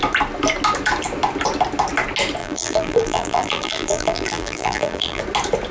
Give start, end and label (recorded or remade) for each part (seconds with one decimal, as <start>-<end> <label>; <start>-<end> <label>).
0.0-2.4 recorded; 2.4-5.2 remade; 5.2-5.7 recorded